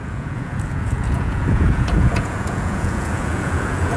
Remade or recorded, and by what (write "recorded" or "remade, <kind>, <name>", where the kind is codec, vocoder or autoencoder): remade, vocoder, Vocos